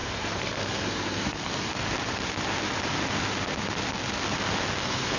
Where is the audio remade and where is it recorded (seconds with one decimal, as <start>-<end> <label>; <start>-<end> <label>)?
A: 0.0-1.7 remade; 1.7-4.8 recorded; 4.8-5.2 remade